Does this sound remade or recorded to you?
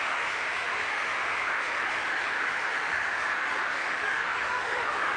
remade